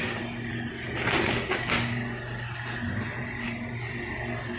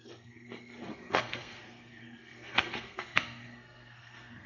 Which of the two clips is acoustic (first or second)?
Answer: first